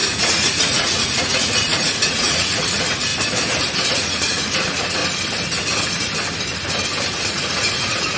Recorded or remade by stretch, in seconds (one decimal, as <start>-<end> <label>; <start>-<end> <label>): 0.0-3.1 remade; 3.1-3.9 recorded; 3.9-5.0 remade; 5.0-7.2 recorded; 7.2-8.2 remade